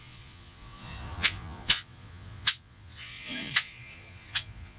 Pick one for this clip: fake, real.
fake